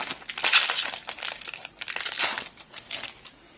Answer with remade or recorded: recorded